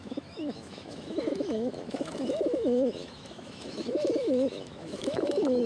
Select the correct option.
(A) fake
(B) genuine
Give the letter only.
A